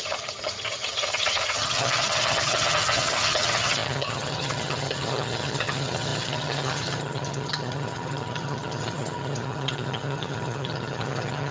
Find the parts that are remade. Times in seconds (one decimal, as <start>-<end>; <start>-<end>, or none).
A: 0.0-11.5